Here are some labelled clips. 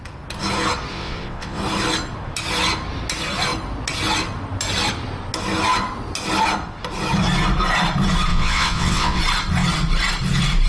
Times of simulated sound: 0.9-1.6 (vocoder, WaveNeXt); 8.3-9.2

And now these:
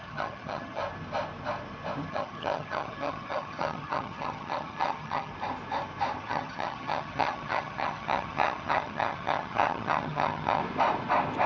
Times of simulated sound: 0.0-0.8 (vocoder, HiFi-GAN); 2.1-5.3; 6.2-10.6

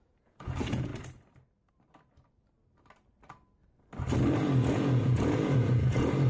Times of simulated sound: 0.0-0.9 (vocoder, Vocos); 4.7-6.3

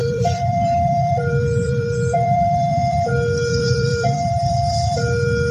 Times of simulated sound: 0.0-3.1 (vocoder, BigVGAN v2); 3.5-5.0